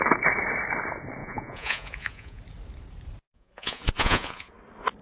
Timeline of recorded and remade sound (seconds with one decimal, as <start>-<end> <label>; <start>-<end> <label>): 0.0-1.2 recorded; 1.2-2.4 remade; 2.4-3.3 recorded; 3.3-4.5 remade; 4.5-5.0 recorded